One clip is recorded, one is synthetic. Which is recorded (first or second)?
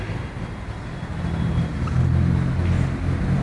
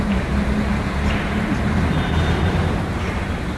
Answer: first